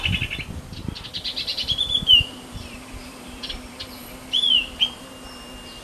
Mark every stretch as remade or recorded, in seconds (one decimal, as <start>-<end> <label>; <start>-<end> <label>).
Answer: 0.0-1.3 recorded; 1.3-4.8 remade; 4.8-5.8 recorded